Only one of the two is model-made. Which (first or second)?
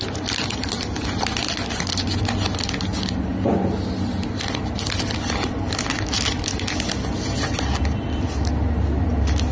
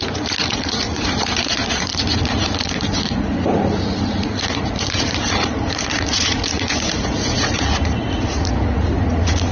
second